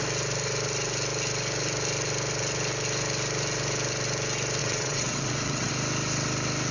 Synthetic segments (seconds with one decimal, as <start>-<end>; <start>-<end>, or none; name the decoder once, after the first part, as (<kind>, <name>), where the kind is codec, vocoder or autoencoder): 4.6-5.7 (vocoder, WaveNeXt)